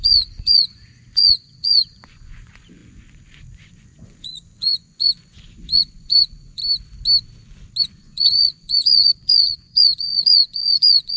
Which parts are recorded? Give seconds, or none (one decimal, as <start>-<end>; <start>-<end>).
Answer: 6.6-7.8